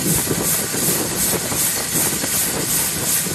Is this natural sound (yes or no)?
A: yes